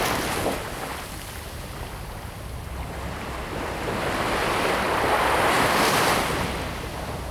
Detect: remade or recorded recorded